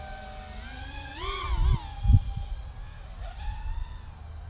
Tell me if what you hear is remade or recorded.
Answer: recorded